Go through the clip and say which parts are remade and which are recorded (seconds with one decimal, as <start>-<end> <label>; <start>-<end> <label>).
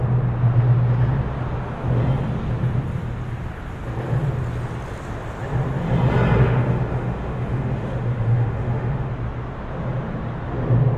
0.0-6.4 recorded; 6.4-9.1 remade; 9.1-11.0 recorded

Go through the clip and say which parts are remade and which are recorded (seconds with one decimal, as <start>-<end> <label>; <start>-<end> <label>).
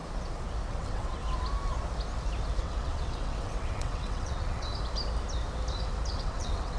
0.0-0.7 recorded; 0.7-1.2 remade; 1.2-2.6 recorded; 2.6-4.7 remade; 4.7-6.1 recorded; 6.1-6.8 remade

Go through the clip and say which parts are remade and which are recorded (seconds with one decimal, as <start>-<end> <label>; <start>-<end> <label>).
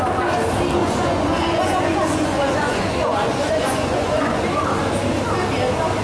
0.0-0.8 recorded; 0.8-4.4 remade; 4.4-6.0 recorded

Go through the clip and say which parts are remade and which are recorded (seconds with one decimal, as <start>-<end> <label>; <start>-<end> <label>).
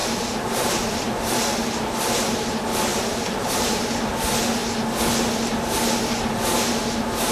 0.0-1.0 remade; 1.0-2.9 recorded; 2.9-3.9 remade; 3.9-7.3 recorded